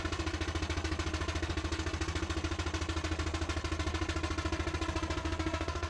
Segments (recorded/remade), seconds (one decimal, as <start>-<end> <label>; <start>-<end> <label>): 0.0-5.2 recorded; 5.2-5.9 remade

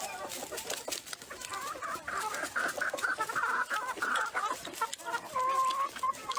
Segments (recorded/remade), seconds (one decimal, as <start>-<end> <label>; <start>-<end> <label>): 0.0-6.4 recorded

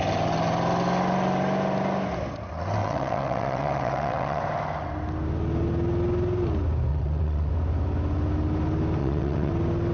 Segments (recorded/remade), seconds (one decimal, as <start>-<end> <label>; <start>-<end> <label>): 0.0-2.8 recorded; 2.8-4.4 remade; 4.4-6.9 recorded; 6.9-7.5 remade; 7.5-9.0 recorded; 9.0-9.5 remade; 9.5-9.9 recorded